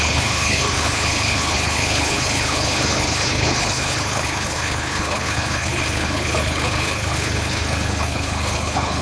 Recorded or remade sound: remade